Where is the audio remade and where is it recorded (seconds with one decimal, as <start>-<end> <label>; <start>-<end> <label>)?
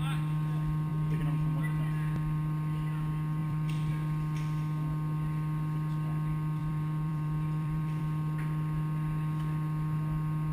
0.0-0.9 recorded; 0.9-1.6 remade; 1.6-3.4 recorded; 3.4-3.9 remade; 3.9-6.6 recorded; 6.6-8.0 remade; 8.0-10.5 recorded